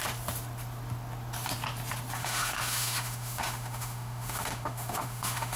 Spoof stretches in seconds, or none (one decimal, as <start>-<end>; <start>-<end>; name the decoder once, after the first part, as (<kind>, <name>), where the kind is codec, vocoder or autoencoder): 2.2-5.6 (autoencoder, DAC-VAE)